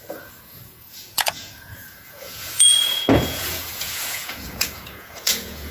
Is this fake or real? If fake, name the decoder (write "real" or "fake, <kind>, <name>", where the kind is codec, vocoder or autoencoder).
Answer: fake, vocoder, Vocos